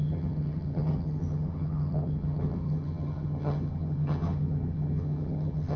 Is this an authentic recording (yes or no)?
no